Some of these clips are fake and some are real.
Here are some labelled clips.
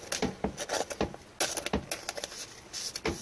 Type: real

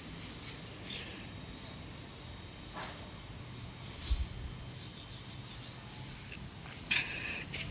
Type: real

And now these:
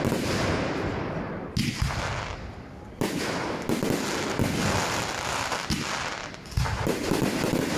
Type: real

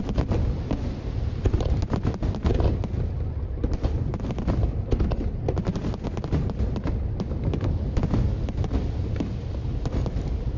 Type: real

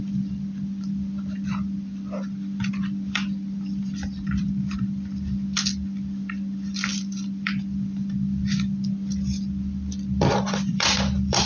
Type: fake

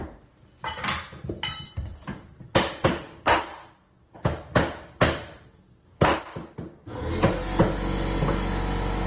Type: real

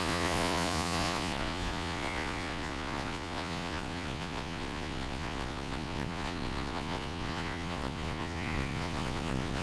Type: fake